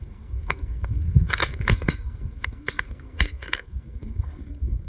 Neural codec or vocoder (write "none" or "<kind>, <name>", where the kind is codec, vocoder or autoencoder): codec, SNAC